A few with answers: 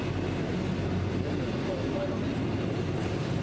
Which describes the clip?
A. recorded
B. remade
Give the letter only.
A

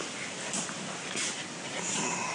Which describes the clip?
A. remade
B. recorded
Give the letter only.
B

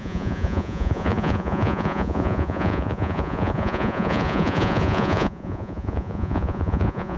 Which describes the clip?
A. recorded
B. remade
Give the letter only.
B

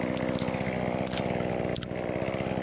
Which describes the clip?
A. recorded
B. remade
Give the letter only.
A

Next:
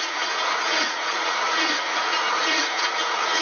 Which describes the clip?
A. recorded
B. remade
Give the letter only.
B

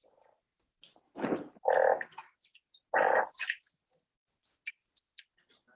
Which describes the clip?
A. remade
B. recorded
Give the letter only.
B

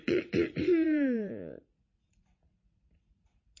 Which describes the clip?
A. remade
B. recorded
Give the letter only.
A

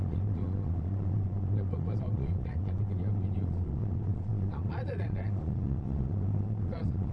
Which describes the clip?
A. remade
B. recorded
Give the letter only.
A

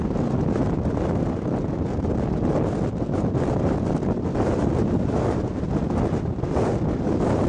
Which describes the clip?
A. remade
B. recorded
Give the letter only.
B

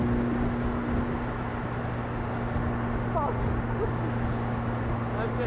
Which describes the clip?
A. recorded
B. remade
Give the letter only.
A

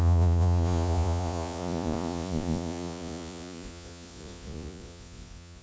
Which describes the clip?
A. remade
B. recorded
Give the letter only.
A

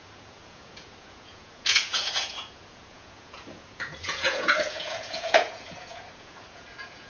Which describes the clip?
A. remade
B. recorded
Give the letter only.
A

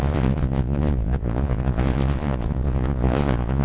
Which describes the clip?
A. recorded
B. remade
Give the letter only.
B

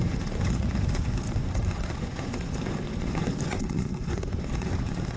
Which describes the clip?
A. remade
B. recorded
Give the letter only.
A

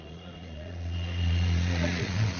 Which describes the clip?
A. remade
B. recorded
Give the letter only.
A